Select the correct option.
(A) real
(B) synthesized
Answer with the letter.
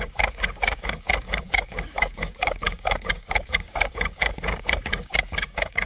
B